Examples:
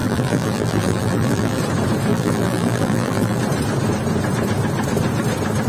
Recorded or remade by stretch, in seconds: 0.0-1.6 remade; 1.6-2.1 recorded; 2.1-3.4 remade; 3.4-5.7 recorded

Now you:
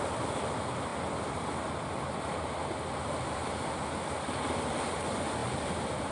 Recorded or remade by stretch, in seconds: 0.0-6.1 recorded

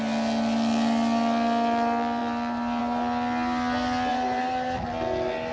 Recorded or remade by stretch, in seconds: 0.0-4.1 recorded; 4.1-4.8 remade; 4.8-5.5 recorded

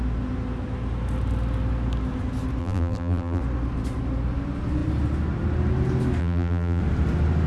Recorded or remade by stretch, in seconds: 0.0-2.6 recorded; 2.6-3.4 remade; 3.4-6.2 recorded; 6.2-6.8 remade; 6.8-7.5 recorded

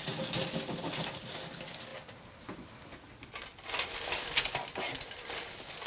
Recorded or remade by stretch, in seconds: 0.0-5.9 recorded

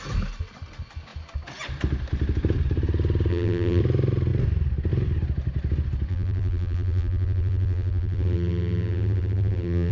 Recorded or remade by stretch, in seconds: 0.0-3.3 recorded; 3.3-3.8 remade; 3.8-6.1 recorded; 6.1-9.9 remade